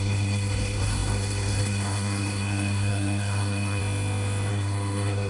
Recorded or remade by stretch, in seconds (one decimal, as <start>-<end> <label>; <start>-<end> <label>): 0.0-3.8 remade; 3.8-4.5 recorded; 4.5-5.3 remade

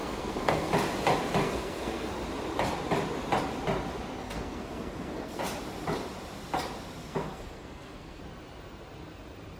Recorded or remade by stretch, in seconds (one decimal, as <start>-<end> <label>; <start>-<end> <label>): 0.0-0.7 remade; 0.7-1.4 recorded; 1.4-2.1 remade; 2.1-4.2 recorded; 4.2-5.4 remade; 5.4-7.0 recorded; 7.0-8.2 remade; 8.2-9.6 recorded

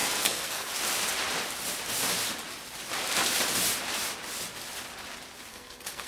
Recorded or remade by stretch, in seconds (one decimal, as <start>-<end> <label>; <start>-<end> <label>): 0.0-0.7 remade; 0.7-5.5 recorded; 5.5-6.1 remade

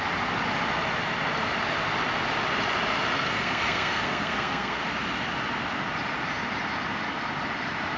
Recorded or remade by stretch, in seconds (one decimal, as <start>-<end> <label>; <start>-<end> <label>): 0.0-3.3 recorded; 3.3-4.8 remade; 4.8-8.0 recorded

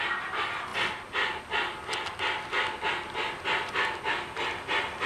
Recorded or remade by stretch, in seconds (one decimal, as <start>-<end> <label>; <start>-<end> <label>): 0.0-5.1 recorded

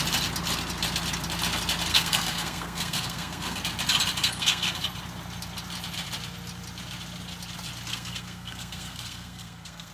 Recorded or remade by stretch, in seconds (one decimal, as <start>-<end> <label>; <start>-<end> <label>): 0.0-1.9 recorded; 1.9-3.6 remade; 3.6-4.2 recorded; 4.2-4.8 remade; 4.8-7.9 recorded; 7.9-9.9 remade

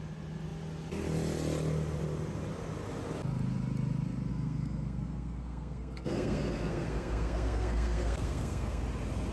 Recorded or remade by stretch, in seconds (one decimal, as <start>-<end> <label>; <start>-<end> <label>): 0.0-4.3 recorded; 4.3-8.8 remade; 8.8-9.3 recorded

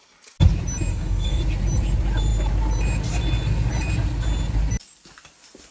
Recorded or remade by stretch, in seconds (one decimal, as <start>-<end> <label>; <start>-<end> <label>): 0.0-0.9 recorded; 0.9-1.4 remade; 1.4-5.7 recorded